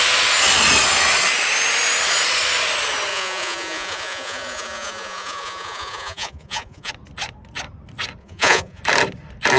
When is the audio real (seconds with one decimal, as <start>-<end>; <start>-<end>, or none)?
0.0-3.1; 6.9-8.2; 8.8-9.6